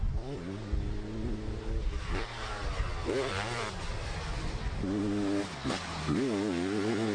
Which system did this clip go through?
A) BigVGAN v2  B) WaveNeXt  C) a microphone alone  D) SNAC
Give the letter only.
C